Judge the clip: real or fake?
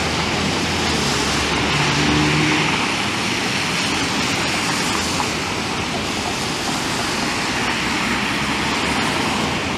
real